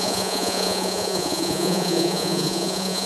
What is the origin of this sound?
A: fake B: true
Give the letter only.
A